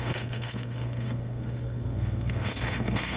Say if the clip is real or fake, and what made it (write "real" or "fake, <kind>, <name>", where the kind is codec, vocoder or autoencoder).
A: fake, codec, SNAC